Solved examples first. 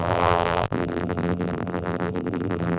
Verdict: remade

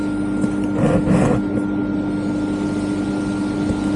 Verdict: recorded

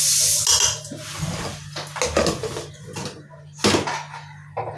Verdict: recorded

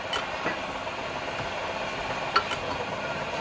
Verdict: recorded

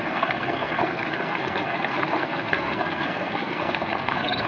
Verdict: remade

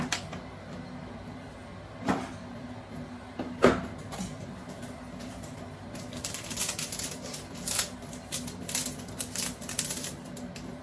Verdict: recorded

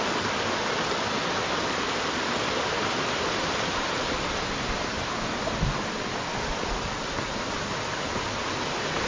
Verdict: recorded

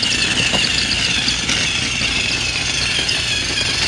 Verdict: recorded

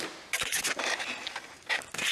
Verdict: recorded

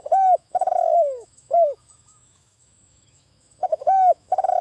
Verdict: remade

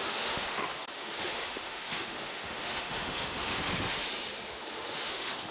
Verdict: remade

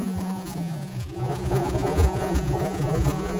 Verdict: remade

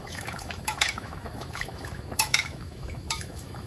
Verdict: remade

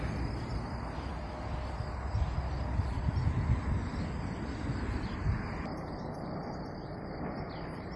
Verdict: recorded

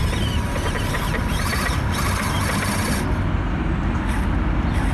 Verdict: recorded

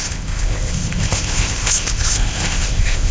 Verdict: remade